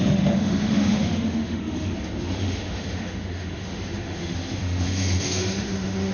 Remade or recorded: remade